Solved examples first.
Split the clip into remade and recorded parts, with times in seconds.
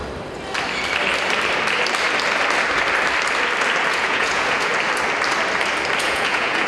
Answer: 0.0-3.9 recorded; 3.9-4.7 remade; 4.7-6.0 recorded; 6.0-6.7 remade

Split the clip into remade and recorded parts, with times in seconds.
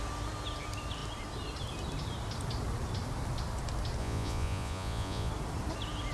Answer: 0.0-4.0 recorded; 4.0-5.3 remade; 5.3-6.1 recorded